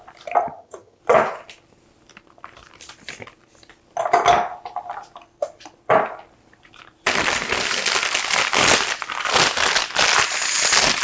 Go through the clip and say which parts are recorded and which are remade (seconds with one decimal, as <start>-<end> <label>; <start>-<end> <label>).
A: 0.0-0.4 recorded; 0.4-1.0 remade; 1.0-11.0 recorded